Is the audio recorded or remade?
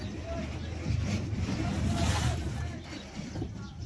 recorded